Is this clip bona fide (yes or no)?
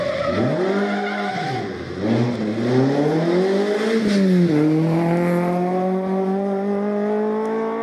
yes